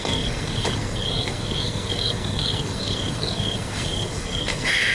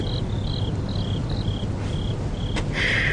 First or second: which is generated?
first